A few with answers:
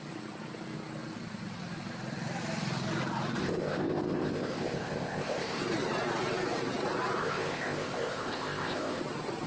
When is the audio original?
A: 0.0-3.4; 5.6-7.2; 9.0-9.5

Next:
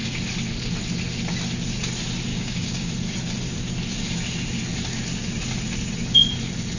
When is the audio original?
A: 0.0-2.3; 2.9-6.8

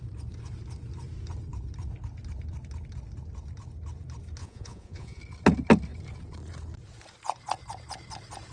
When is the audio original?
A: 0.0-4.4; 5.2-8.5

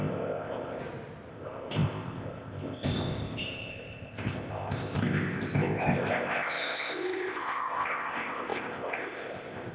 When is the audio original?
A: 0.8-1.3

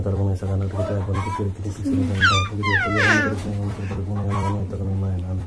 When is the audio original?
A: none